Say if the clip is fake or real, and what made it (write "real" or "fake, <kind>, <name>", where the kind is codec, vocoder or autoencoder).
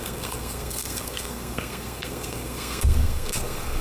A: fake, codec, SNAC